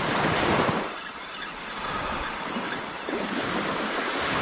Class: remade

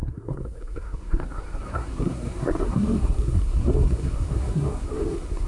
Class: remade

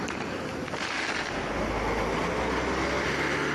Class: recorded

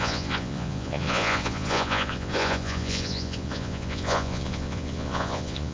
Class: remade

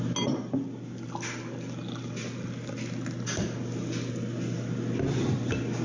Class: recorded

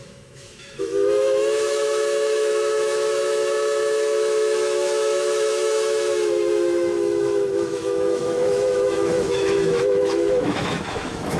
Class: remade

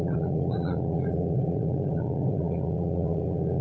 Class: remade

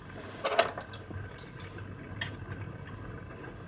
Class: recorded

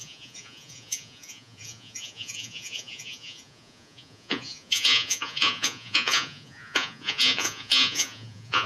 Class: remade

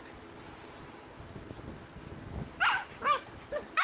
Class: recorded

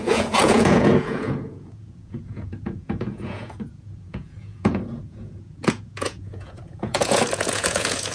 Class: remade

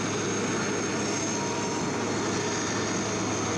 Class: recorded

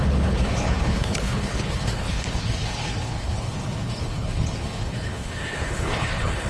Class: remade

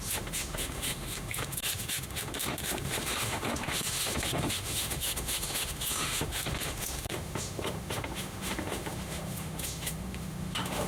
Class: remade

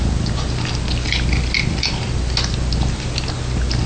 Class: recorded